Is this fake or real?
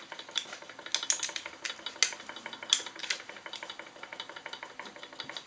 real